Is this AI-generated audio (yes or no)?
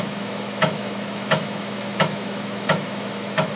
yes